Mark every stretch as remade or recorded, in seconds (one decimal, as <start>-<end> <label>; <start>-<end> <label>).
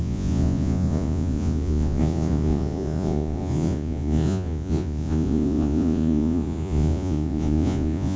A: 0.0-8.2 remade